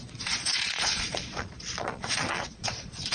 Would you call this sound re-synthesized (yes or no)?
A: yes